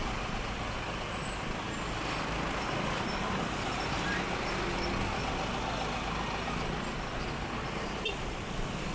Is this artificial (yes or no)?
no